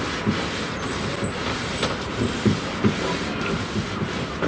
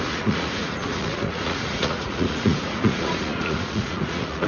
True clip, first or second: first